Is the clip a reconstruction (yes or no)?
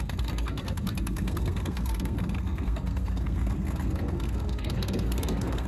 yes